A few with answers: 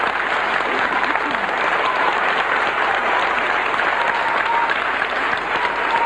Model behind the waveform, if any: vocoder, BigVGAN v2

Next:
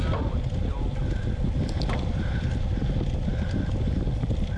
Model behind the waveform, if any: none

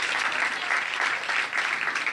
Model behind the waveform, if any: vocoder, BigVGAN v2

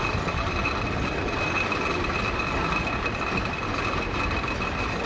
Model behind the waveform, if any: none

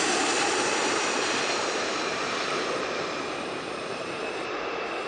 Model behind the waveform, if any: vocoder, BigVGAN v2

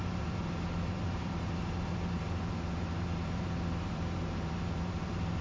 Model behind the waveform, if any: vocoder, BigVGAN v2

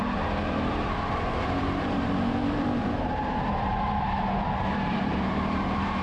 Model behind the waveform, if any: vocoder, BigVGAN v2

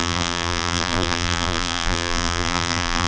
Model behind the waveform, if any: vocoder, BigVGAN v2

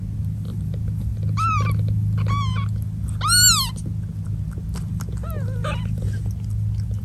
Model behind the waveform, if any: none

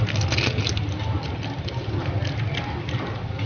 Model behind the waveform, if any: none